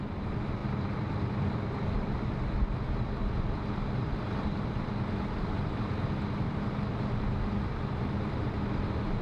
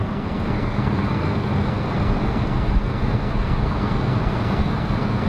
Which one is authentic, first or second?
first